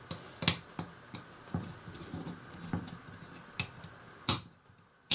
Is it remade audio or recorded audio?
recorded